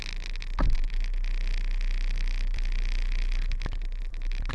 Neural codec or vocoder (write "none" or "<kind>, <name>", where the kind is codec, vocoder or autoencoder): none